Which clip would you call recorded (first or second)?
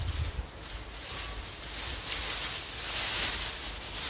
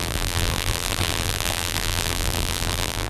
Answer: first